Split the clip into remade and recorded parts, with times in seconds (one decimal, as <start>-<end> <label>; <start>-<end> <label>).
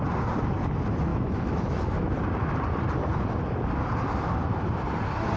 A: 0.0-1.1 recorded; 1.1-2.1 remade; 2.1-5.4 recorded